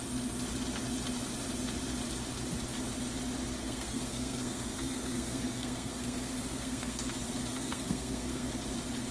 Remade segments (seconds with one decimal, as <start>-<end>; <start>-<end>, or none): 3.6-7.0; 7.5-8.5